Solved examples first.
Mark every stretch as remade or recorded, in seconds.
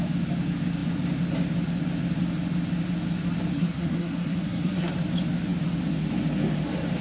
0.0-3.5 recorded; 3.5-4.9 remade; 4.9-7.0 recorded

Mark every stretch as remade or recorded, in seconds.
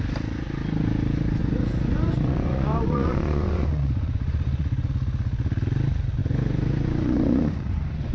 0.0-1.4 recorded; 1.4-4.9 remade; 4.9-6.2 recorded; 6.2-8.1 remade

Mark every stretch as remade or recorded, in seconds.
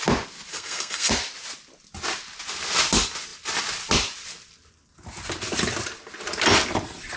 0.0-0.5 recorded; 0.5-1.1 remade; 1.1-7.2 recorded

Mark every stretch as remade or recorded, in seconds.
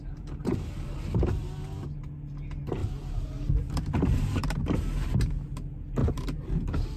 0.0-0.9 remade; 0.9-2.8 recorded; 2.8-4.6 remade; 4.6-6.0 recorded; 6.0-7.0 remade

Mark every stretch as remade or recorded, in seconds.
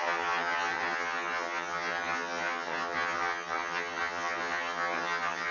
0.0-5.5 remade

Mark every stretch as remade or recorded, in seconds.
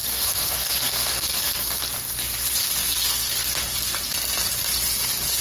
0.0-1.8 remade; 1.8-2.8 recorded; 2.8-3.4 remade; 3.4-5.4 recorded